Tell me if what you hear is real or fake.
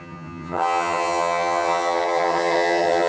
fake